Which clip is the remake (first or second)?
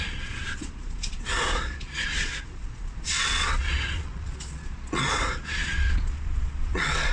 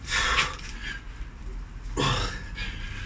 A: first